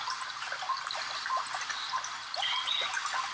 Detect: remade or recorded recorded